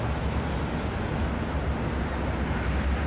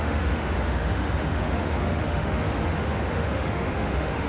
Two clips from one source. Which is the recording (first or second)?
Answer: first